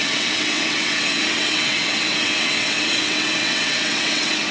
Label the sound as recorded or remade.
remade